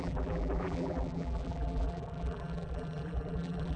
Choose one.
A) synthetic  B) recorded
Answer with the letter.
A